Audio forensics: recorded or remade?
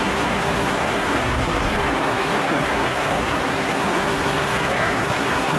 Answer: remade